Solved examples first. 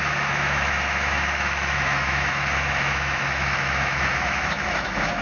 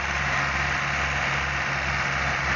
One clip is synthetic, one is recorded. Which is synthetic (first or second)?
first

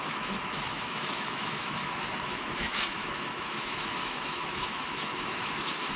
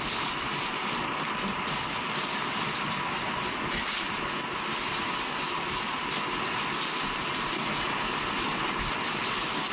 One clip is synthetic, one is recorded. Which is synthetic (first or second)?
first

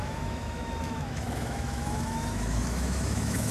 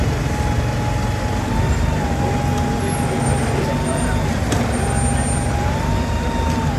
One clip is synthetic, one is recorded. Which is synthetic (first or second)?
first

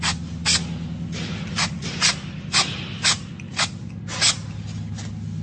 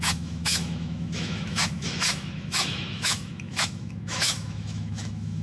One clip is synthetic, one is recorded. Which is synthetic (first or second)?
second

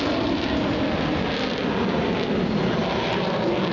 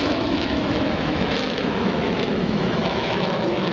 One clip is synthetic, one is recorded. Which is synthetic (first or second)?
second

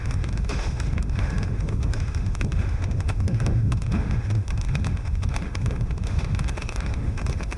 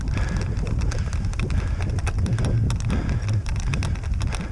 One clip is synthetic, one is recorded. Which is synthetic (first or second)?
first